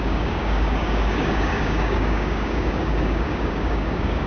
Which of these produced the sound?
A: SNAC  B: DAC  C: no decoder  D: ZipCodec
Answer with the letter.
B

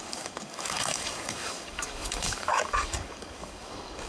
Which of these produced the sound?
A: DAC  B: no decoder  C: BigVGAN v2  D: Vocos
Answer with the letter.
A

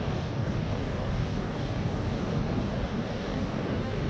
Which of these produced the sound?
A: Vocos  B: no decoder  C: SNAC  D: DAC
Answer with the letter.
D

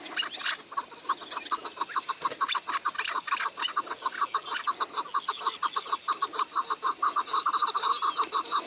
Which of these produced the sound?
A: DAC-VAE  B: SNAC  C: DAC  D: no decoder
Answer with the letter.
D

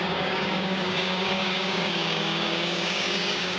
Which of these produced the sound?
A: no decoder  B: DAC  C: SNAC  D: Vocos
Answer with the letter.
B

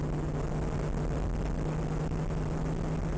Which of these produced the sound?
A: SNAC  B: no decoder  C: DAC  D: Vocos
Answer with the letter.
B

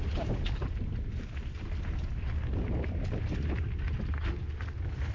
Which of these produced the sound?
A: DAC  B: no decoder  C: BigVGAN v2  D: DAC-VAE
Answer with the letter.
B